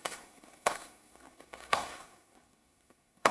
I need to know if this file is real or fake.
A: fake